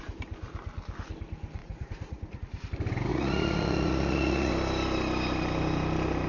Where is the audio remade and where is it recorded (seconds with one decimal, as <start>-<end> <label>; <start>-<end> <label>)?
0.0-1.6 recorded; 1.6-2.4 remade; 2.4-3.1 recorded; 3.1-4.5 remade; 4.5-6.3 recorded